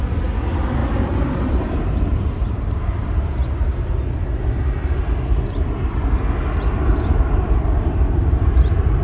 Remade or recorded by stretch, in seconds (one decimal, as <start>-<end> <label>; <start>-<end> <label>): 0.0-0.8 recorded; 0.8-3.3 remade; 3.3-6.9 recorded; 6.9-9.0 remade